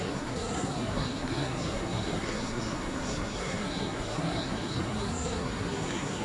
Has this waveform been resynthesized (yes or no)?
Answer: yes